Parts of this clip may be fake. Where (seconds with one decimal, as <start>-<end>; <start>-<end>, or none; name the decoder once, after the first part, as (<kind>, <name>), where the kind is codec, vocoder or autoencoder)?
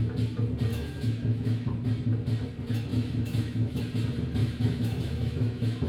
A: 0.7-1.7 (autoencoder, DAC-VAE); 2.9-3.8; 4.4-5.9